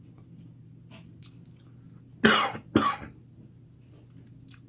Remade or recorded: recorded